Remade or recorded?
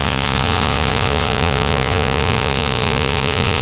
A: remade